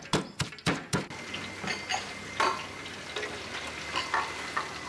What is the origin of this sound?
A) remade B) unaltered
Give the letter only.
B